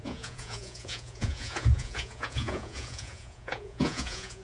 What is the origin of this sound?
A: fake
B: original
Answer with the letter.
A